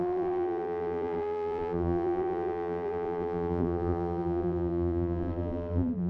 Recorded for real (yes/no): no